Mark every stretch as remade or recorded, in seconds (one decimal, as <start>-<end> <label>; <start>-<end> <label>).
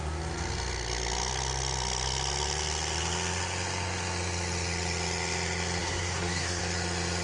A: 0.0-5.8 recorded; 5.8-6.6 remade; 6.6-7.2 recorded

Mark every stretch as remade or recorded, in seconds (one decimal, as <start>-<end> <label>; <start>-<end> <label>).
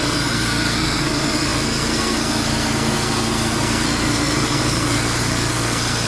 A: 0.0-6.1 remade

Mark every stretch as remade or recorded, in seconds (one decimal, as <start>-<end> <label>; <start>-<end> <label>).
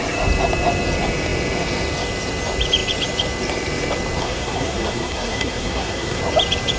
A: 0.0-4.2 recorded; 4.2-6.2 remade; 6.2-6.8 recorded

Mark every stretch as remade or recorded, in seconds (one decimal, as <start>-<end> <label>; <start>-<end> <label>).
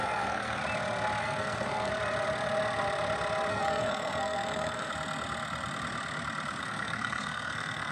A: 0.0-0.6 remade; 0.6-1.2 recorded; 1.2-1.9 remade; 1.9-3.5 recorded; 3.5-4.9 remade; 4.9-6.6 recorded; 6.6-7.9 remade